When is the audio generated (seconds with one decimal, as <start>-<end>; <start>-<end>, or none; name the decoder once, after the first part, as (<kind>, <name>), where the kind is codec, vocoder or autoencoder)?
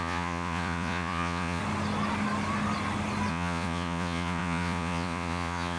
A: 0.0-1.6 (vocoder, Vocos); 3.3-5.8